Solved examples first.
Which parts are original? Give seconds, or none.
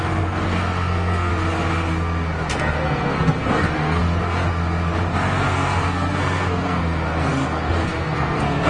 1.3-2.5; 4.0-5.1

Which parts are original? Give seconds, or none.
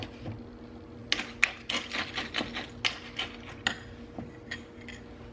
0.0-5.3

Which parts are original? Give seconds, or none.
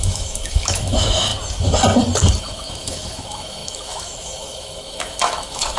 1.3-2.4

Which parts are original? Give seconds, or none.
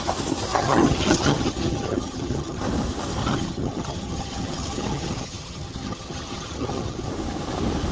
0.0-0.5; 2.6-3.2; 7.1-7.9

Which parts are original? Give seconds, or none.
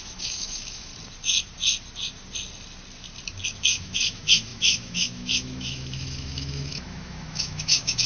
0.9-3.6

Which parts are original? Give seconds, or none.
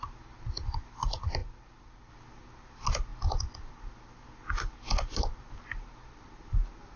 0.0-7.0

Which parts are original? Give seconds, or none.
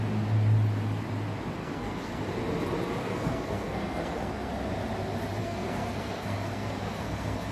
0.0-1.6; 2.2-3.0; 4.5-5.4